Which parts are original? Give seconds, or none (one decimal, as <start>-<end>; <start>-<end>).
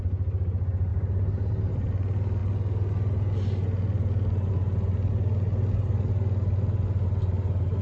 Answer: 0.0-7.8